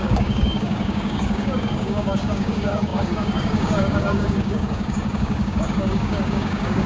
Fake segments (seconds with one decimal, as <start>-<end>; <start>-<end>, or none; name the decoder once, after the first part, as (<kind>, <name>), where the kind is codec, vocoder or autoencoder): 0.0-6.9 (codec, DAC)